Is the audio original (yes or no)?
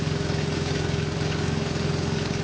no